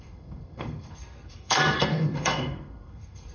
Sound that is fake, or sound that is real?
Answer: fake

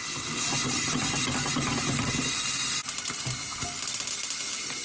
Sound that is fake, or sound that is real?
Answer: real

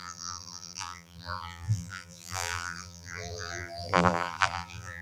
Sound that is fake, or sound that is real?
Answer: fake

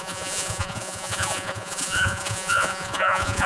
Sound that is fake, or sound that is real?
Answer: fake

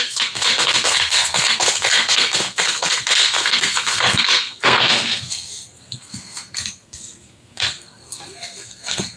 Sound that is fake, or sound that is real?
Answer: fake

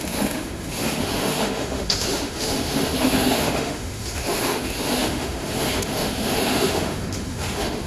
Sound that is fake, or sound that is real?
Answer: fake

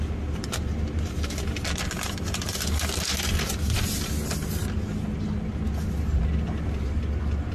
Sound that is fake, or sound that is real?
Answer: real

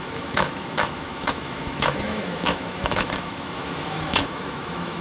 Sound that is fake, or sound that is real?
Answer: fake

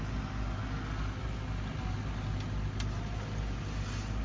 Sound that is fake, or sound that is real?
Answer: real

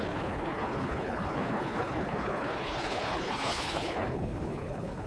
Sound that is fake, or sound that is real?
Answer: fake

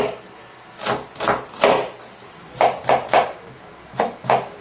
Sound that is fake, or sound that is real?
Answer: real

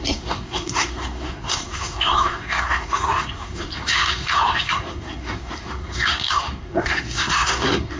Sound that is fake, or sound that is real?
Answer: fake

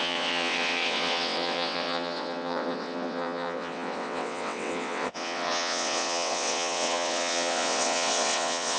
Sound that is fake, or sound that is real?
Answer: fake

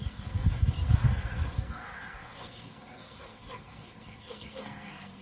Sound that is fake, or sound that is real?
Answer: fake